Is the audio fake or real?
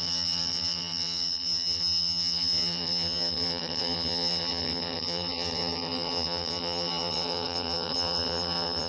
fake